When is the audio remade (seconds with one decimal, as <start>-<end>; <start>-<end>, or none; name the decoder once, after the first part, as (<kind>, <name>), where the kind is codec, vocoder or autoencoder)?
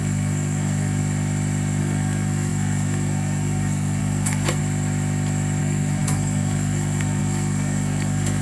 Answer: 0.0-1.0 (codec, SNAC); 1.8-4.6; 5.6-8.4